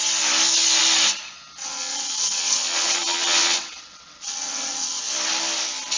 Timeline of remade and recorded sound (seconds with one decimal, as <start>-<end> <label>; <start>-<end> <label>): 0.0-1.6 recorded; 1.6-5.0 remade; 5.0-6.0 recorded